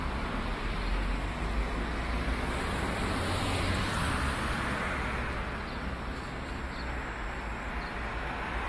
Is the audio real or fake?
real